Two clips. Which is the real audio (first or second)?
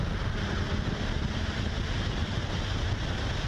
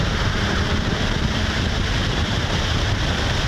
first